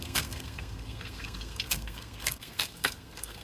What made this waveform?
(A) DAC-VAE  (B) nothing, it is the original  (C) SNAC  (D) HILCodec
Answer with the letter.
C